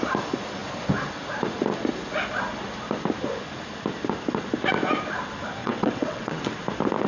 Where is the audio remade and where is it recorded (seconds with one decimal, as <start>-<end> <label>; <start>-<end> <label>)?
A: 0.0-5.6 recorded; 5.6-6.6 remade; 6.6-7.1 recorded